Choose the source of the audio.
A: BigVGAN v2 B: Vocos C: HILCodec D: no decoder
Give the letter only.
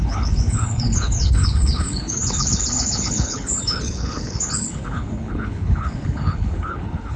C